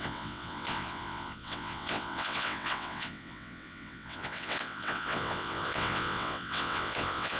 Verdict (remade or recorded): remade